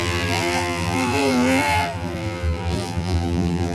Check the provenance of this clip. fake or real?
fake